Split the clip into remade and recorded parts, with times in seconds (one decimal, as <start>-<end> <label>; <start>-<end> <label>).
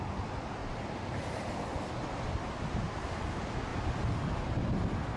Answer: 0.0-0.6 recorded; 0.6-3.0 remade; 3.0-5.2 recorded